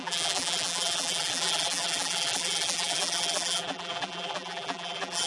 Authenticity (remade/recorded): remade